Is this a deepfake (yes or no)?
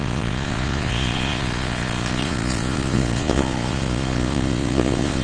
yes